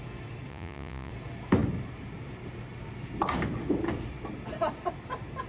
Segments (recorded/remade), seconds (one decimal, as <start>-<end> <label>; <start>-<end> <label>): 0.0-0.5 recorded; 0.5-1.1 remade; 1.1-5.5 recorded